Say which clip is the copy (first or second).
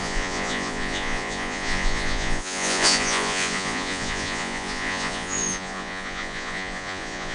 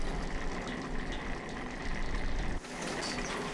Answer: first